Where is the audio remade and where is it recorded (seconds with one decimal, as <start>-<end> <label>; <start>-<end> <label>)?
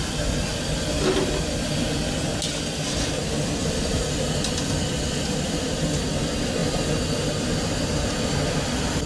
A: 0.0-9.1 recorded